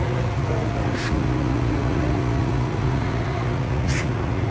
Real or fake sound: fake